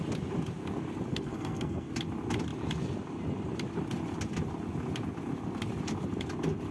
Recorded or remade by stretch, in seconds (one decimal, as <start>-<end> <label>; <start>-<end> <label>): 0.0-1.1 recorded; 1.1-1.9 remade; 1.9-6.7 recorded